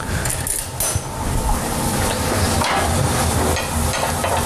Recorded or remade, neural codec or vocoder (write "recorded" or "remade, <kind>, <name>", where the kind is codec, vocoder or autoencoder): recorded